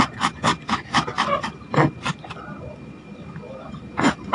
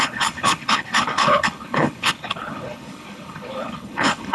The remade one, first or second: second